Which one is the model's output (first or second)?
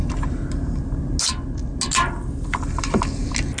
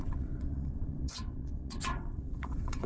second